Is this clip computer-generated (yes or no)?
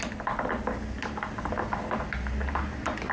no